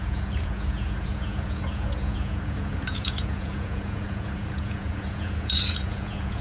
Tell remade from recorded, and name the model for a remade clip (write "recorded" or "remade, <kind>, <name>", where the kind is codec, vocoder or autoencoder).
remade, vocoder, Vocos